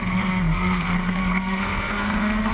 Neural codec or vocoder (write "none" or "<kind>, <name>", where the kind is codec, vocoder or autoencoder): codec, SNAC